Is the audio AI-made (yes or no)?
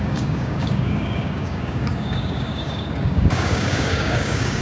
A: yes